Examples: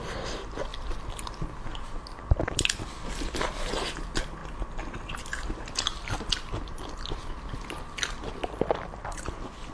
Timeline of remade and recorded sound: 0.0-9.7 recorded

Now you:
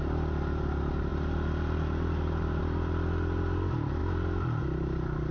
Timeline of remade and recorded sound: 0.0-5.3 recorded

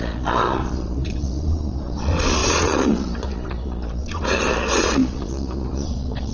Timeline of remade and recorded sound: 0.0-6.3 remade